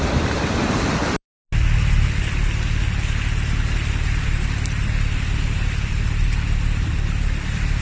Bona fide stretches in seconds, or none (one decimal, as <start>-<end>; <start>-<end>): 1.4-3.9